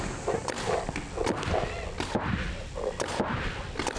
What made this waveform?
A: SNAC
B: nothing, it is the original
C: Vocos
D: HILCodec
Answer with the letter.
B